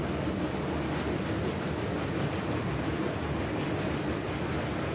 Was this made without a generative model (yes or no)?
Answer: yes